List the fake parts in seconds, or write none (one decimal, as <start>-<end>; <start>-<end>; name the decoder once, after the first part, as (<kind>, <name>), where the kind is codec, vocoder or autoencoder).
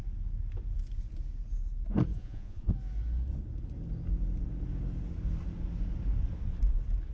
2.1-2.7 (vocoder, Vocos)